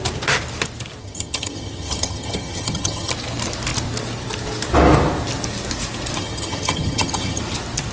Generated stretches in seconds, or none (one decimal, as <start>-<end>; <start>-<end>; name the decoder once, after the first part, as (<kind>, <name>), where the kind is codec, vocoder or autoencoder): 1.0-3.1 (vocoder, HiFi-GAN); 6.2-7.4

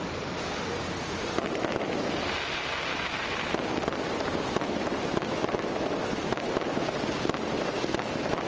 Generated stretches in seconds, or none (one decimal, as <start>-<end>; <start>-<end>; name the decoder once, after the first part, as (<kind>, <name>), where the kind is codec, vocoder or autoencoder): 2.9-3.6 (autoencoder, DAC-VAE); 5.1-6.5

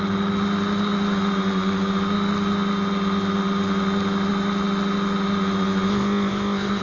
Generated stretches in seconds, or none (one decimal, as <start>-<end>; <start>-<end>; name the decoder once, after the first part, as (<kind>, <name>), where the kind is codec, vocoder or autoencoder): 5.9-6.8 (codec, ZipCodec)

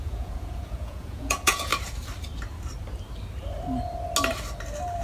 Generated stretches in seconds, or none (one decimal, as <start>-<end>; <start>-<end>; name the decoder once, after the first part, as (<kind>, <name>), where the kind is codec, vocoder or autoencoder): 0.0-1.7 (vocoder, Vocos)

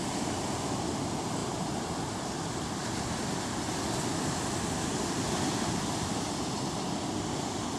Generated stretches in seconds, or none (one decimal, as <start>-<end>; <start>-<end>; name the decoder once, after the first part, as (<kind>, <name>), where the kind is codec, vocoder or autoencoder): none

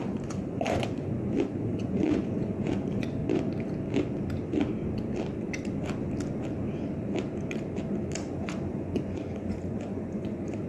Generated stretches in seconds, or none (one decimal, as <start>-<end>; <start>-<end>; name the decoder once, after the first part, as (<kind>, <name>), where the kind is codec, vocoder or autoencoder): 0.0-3.2 (vocoder, Vocos); 8.3-10.7